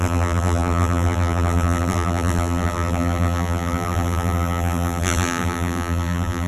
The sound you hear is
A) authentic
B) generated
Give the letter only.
B